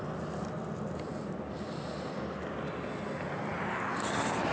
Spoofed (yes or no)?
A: no